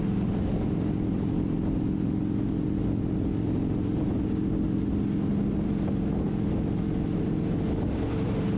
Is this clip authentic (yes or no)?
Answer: yes